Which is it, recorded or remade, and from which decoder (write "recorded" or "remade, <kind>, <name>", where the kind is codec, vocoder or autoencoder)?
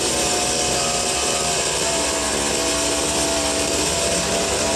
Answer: recorded